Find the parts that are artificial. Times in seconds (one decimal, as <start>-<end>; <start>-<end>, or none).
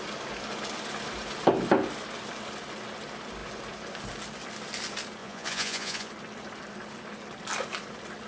5.2-6.1